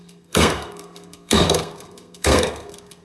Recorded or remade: remade